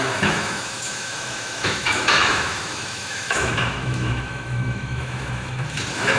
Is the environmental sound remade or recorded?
remade